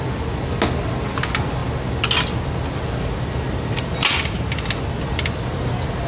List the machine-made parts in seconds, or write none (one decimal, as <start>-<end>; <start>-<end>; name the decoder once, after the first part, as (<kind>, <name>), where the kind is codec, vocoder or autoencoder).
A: none